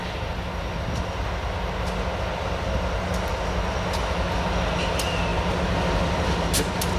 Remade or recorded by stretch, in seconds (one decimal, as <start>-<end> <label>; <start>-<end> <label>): 0.0-7.0 recorded